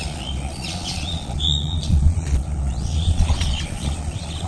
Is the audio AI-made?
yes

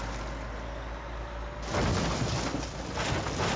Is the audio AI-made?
no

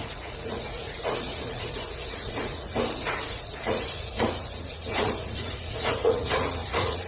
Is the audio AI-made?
yes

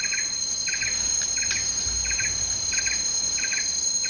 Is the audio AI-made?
no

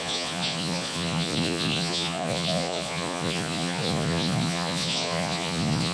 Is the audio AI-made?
yes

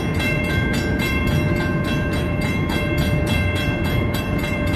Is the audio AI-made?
yes